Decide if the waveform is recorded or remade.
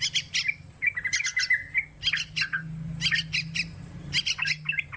recorded